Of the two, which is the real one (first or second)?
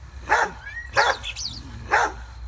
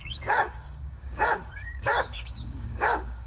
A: first